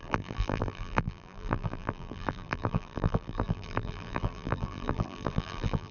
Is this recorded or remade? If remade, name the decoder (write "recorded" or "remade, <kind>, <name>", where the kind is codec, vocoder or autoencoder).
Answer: remade, vocoder, BigVGAN v2